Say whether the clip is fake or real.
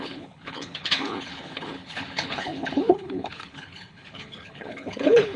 fake